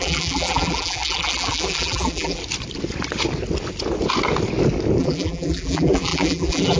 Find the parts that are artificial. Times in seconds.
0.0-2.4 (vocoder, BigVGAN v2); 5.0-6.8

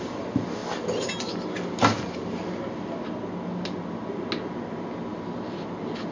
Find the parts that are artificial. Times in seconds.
none